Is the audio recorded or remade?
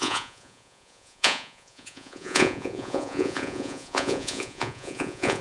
remade